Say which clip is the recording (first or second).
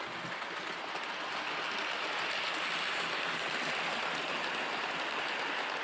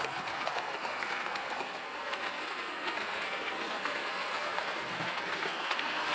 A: first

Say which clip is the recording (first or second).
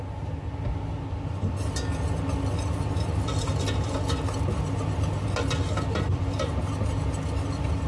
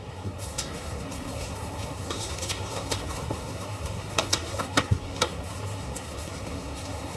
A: first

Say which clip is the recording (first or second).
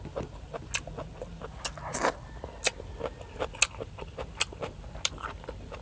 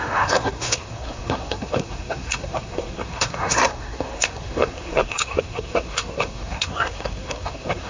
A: first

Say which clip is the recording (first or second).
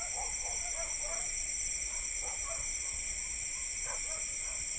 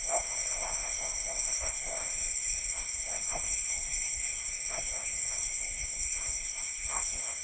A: first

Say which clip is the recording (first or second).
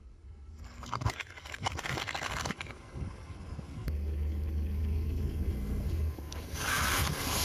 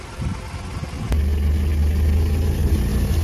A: second